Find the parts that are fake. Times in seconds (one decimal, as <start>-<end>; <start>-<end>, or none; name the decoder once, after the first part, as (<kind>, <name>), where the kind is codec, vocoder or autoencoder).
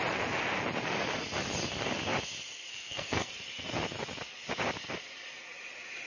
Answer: 2.7-3.3 (codec, SNAC)